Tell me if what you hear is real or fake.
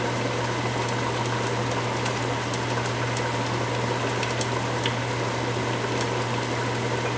real